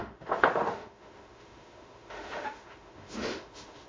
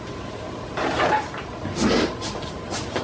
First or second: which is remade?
first